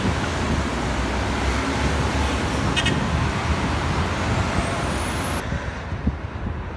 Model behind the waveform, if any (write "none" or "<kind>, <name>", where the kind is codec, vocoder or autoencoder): none